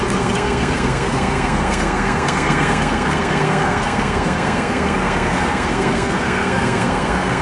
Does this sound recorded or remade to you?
remade